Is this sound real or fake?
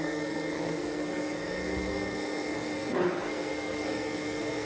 fake